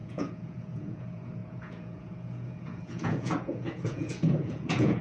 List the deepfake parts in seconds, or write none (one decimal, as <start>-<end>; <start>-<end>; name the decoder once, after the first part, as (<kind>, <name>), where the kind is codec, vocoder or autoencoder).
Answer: 0.0-5.0 (vocoder, Vocos)